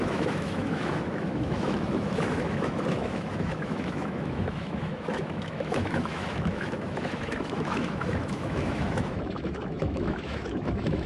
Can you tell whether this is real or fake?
fake